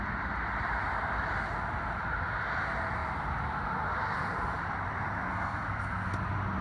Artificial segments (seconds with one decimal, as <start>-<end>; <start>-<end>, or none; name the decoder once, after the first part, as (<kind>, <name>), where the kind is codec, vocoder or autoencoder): 5.3-6.1 (codec, SNAC)